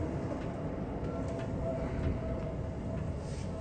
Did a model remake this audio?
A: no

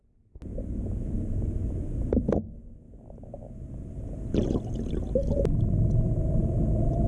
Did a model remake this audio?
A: no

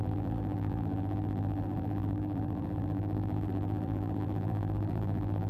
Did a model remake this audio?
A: yes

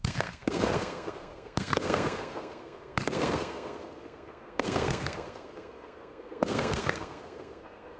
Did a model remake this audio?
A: yes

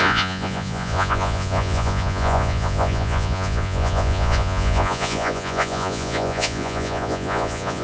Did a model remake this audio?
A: yes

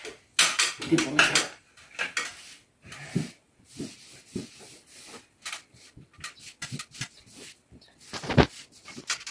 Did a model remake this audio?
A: no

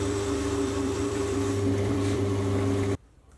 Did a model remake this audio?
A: yes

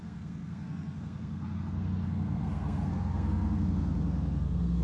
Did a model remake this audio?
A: yes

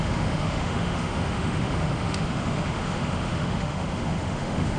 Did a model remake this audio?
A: yes